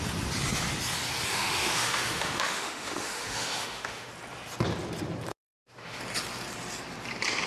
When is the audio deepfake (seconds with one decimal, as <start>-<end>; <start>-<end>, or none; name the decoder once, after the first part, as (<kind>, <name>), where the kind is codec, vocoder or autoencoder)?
1.3-4.1 (autoencoder, DAC-VAE); 5.3-6.0